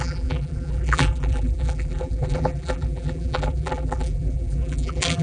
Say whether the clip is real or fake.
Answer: fake